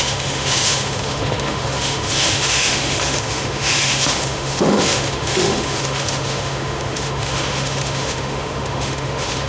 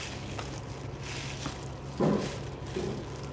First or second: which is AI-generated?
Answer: first